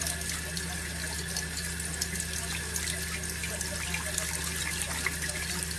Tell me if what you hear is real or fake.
real